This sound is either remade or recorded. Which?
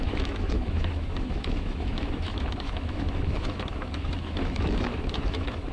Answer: remade